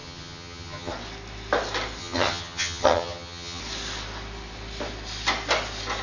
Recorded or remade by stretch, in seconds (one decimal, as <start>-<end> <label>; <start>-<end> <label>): 0.0-0.9 remade; 0.9-2.0 recorded; 2.0-3.6 remade; 3.6-6.0 recorded